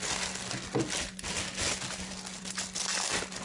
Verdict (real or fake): real